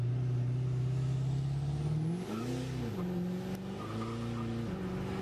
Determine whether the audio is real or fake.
real